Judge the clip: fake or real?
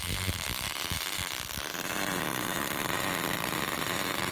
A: real